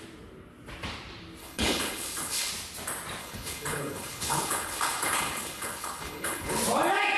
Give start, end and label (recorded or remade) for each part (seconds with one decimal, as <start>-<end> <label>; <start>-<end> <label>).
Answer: 0.0-1.4 recorded; 1.4-2.5 remade; 2.5-3.2 recorded; 3.2-6.6 remade; 6.6-7.2 recorded